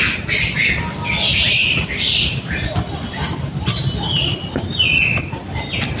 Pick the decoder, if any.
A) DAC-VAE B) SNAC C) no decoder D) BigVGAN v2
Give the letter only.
C